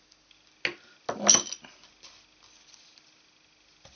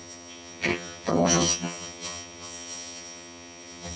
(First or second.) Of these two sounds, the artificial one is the second